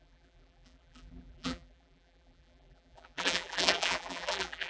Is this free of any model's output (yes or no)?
no